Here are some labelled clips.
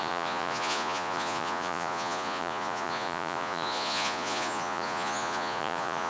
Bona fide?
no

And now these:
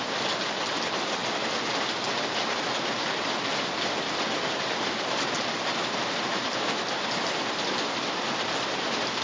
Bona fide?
yes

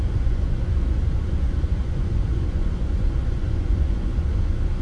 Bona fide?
no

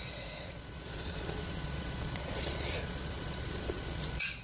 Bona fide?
no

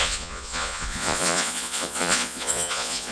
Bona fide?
no